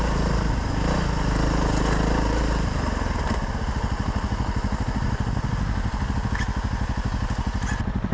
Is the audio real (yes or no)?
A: yes